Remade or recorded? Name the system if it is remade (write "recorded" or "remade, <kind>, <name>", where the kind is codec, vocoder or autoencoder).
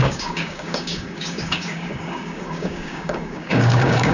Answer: remade, codec, DAC